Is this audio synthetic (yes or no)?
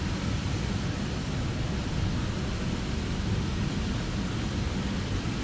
no